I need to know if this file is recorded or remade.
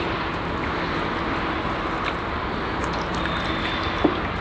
recorded